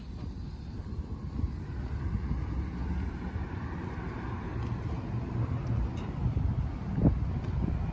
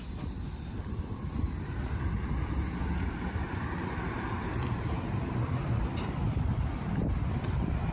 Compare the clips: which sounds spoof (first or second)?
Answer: second